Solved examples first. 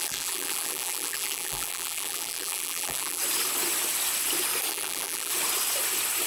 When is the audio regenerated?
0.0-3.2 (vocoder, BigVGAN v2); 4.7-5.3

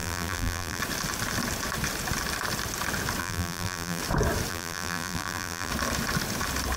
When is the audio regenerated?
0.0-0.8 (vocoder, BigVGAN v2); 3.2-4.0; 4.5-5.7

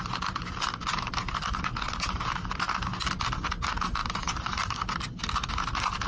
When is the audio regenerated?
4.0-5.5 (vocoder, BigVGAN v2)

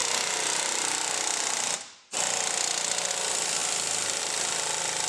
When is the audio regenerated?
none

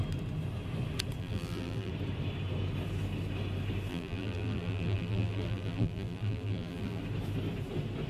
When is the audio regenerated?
1.2-1.9 (vocoder, BigVGAN v2); 3.9-7.0